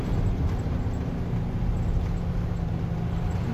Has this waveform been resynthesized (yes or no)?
no